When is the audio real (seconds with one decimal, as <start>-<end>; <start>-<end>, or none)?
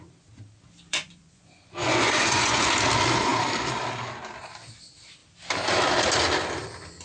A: 0.0-0.9; 2.7-7.0